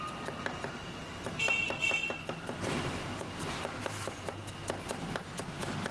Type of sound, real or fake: real